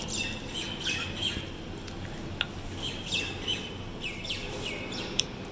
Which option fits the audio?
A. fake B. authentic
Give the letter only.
B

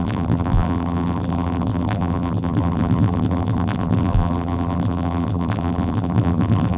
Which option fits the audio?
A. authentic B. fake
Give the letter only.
B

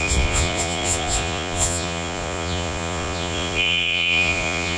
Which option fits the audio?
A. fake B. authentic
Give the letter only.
A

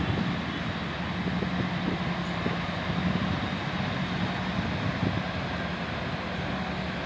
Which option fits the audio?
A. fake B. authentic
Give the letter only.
B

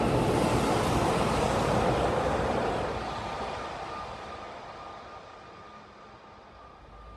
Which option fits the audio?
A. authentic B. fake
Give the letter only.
A